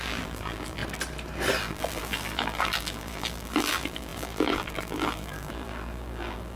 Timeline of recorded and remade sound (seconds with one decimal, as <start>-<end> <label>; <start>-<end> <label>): 0.0-0.8 remade; 0.8-1.6 recorded; 1.6-6.6 remade